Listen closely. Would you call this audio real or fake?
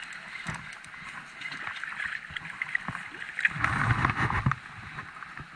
real